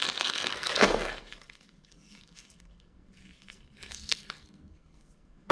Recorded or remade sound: remade